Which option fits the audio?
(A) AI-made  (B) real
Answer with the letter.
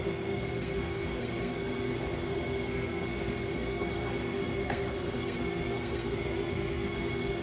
A